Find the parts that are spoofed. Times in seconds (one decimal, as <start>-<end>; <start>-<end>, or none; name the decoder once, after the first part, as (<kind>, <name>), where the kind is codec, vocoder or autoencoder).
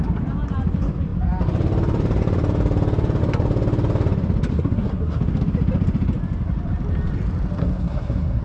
4.5-5.2 (codec, SNAC); 7.6-8.4